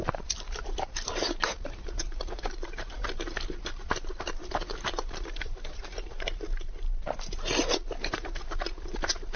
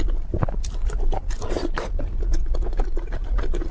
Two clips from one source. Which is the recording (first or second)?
second